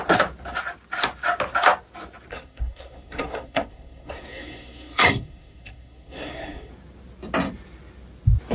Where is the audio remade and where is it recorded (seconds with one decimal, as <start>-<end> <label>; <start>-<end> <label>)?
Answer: 0.0-2.3 recorded; 2.3-6.7 remade; 6.7-8.5 recorded